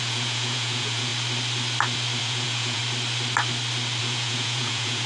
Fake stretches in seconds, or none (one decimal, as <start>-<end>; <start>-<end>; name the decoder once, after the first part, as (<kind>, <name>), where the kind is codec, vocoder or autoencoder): 0.0-1.1 (vocoder, Vocos); 2.2-2.8; 4.0-5.1